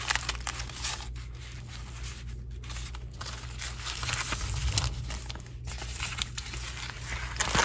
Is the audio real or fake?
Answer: real